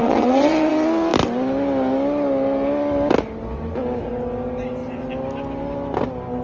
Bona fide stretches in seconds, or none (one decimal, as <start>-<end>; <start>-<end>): 0.7-6.4